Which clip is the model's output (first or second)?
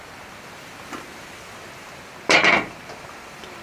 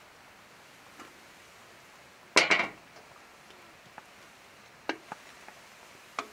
first